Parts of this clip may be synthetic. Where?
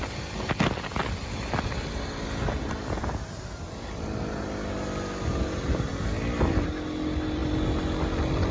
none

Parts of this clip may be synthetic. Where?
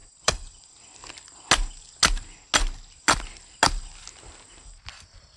0.0-1.4 (vocoder, BigVGAN v2)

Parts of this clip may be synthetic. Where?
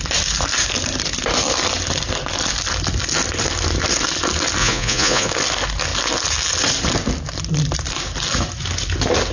4.6-5.3 (vocoder, Vocos)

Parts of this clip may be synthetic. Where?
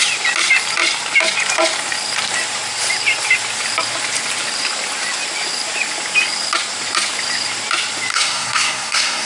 8.1-9.3 (codec, SNAC)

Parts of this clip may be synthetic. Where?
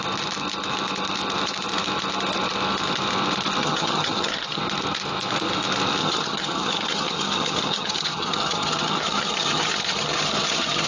3.6-4.6 (vocoder, HiFi-GAN); 6.0-10.9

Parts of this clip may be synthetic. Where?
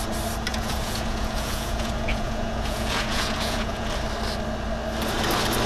0.5-3.9 (vocoder, Vocos)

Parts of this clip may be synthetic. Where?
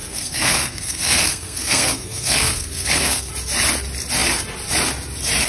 0.0-3.3 (codec, SNAC)